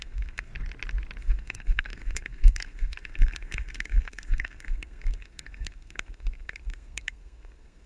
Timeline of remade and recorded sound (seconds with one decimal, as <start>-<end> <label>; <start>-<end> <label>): 0.0-0.5 remade; 0.5-1.2 recorded; 1.2-7.9 remade